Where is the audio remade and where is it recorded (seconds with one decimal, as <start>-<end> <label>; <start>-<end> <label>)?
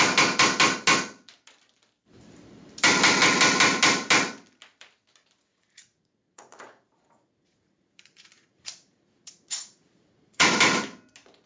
0.0-5.5 recorded; 5.5-10.5 remade; 10.5-11.5 recorded